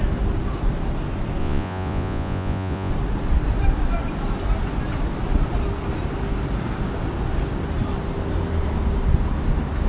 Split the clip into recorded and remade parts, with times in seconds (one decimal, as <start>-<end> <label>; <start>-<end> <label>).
0.0-1.4 recorded; 1.4-2.9 remade; 2.9-9.9 recorded